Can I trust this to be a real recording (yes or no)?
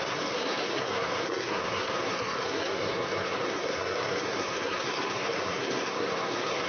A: no